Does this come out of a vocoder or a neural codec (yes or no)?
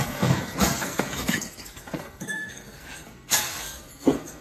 yes